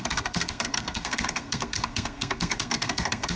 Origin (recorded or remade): remade